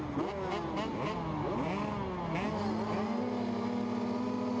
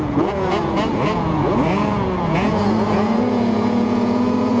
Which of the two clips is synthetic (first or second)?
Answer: second